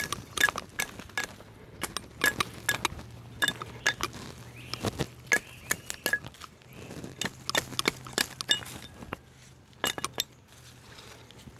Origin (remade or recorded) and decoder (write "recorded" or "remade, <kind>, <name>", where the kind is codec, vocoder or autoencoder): recorded